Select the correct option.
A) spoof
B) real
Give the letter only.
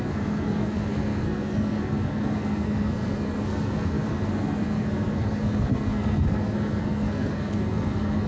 A